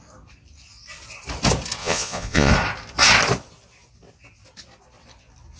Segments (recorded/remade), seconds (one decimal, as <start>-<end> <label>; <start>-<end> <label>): 0.0-1.8 recorded; 1.8-2.5 remade; 2.5-5.6 recorded

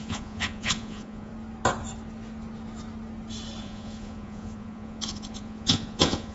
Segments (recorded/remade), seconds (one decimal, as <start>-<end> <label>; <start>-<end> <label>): 0.0-1.3 remade; 1.3-3.6 recorded; 3.6-6.3 remade